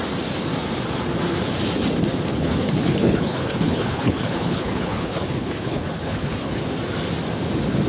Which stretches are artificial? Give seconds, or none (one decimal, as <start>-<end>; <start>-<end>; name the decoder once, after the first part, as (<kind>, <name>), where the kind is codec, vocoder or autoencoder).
2.3-6.6 (codec, HILCodec)